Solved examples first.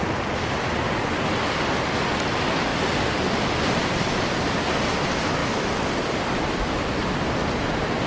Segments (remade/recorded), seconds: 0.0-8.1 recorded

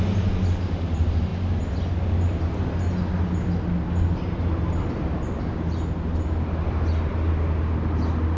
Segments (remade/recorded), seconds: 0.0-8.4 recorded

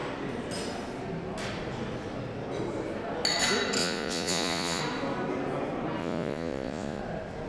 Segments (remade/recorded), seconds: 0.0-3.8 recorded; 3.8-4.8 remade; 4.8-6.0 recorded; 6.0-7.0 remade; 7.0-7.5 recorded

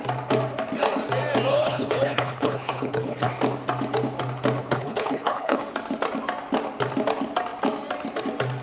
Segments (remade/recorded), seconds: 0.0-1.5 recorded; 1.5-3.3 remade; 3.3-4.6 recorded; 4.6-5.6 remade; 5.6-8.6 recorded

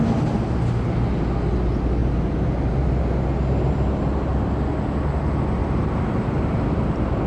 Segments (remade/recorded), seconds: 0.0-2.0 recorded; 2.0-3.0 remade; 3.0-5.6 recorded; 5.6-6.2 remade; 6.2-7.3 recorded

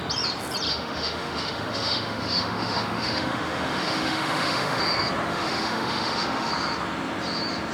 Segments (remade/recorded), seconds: 0.0-0.7 recorded; 0.7-4.8 remade; 4.8-5.3 recorded; 5.3-6.5 remade; 6.5-7.7 recorded